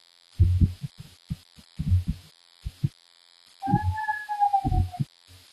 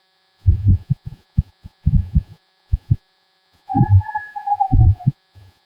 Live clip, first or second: first